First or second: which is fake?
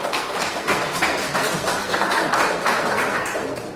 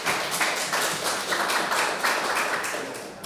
first